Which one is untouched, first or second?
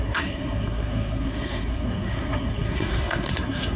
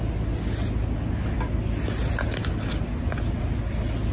second